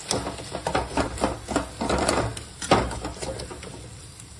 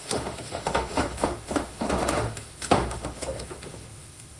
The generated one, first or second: second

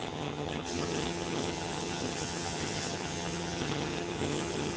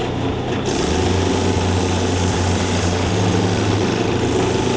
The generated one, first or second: first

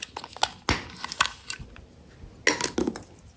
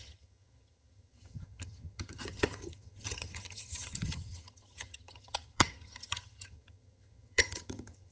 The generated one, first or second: second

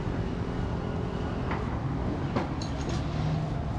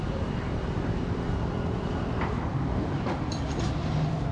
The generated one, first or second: second